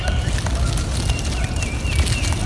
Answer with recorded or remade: recorded